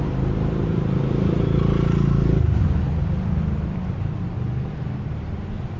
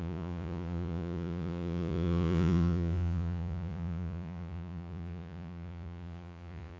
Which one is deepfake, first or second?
second